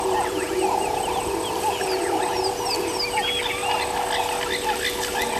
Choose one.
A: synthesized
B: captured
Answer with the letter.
B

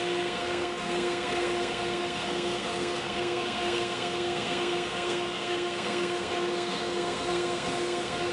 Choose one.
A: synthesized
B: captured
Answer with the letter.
A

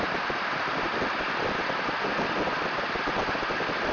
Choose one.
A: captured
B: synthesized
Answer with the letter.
A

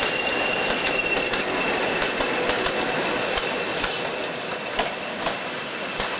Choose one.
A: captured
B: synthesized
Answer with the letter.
A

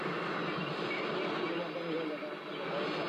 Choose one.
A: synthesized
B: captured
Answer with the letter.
B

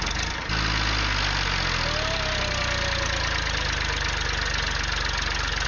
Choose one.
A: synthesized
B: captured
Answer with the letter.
B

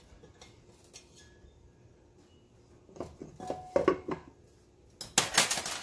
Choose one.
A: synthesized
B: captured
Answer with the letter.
B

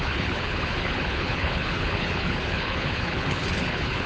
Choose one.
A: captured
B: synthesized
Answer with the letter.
B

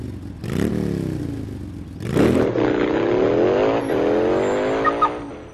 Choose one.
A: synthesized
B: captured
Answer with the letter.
B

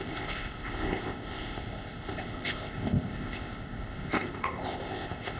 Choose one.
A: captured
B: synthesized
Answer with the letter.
B